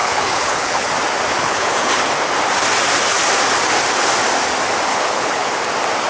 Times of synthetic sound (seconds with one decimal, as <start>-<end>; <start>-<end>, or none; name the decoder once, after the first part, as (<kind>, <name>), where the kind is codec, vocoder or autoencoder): 0.0-0.9 (codec, HILCodec); 1.3-1.9; 4.9-5.5